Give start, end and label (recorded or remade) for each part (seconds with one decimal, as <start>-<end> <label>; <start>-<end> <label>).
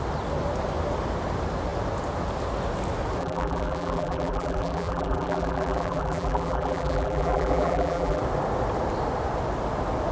0.0-3.2 recorded; 3.2-8.2 remade; 8.2-10.1 recorded